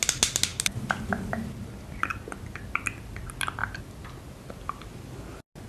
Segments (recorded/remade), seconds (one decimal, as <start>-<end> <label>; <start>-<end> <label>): 0.0-5.7 recorded